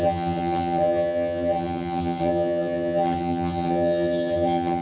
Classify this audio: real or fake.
fake